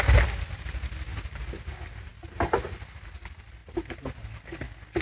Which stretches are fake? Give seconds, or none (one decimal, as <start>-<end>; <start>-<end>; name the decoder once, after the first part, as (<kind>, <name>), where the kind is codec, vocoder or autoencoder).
2.1-2.7 (vocoder, BigVGAN v2)